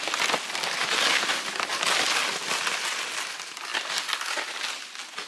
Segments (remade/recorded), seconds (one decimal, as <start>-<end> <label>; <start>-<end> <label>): 0.0-5.3 recorded